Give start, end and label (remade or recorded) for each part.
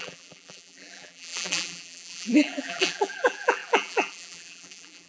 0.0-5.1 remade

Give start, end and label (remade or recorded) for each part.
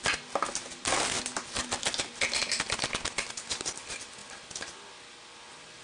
0.0-5.8 recorded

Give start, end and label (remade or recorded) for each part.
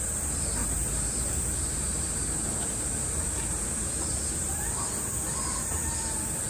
0.0-0.6 recorded; 0.6-4.5 remade; 4.5-6.5 recorded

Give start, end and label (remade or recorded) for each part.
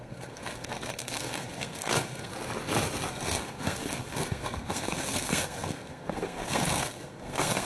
0.0-2.3 remade; 2.3-3.1 recorded; 3.1-7.7 remade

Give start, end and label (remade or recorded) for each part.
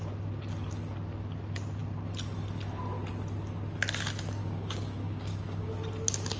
0.0-4.4 recorded; 4.4-5.7 remade; 5.7-6.4 recorded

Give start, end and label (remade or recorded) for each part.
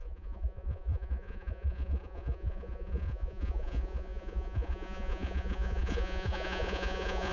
0.0-7.3 remade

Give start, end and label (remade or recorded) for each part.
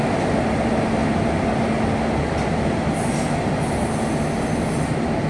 0.0-5.3 recorded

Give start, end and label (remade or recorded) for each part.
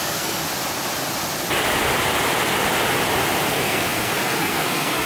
0.0-0.4 remade; 0.4-3.5 recorded; 3.5-5.1 remade